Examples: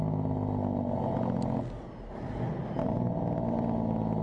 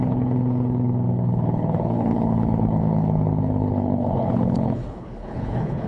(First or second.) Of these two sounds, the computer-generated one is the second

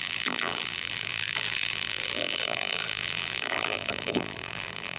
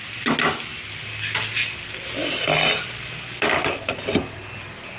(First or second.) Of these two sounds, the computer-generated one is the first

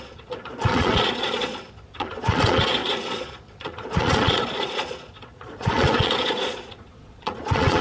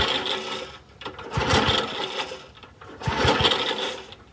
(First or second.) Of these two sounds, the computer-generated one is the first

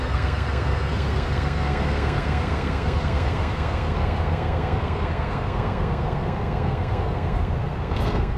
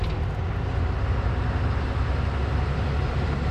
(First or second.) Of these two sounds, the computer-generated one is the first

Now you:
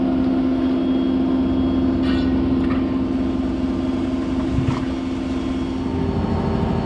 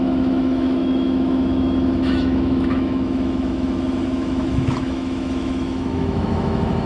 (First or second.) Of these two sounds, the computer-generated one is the second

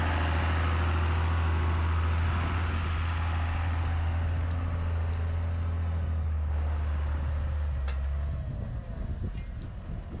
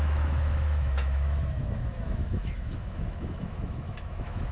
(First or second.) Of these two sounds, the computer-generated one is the second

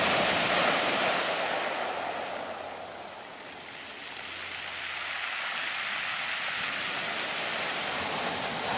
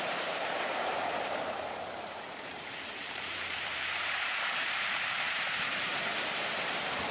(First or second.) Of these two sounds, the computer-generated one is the second